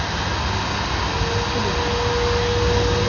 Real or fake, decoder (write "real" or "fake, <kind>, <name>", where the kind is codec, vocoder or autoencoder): real